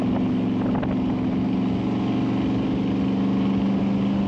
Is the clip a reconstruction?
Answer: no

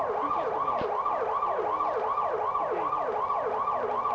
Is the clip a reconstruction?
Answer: no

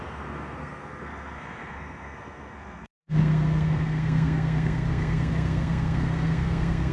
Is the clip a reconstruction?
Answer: yes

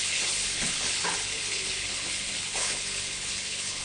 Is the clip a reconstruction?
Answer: yes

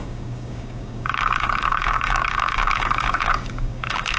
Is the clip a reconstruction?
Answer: yes